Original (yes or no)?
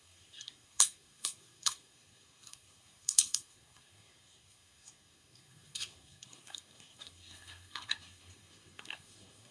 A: no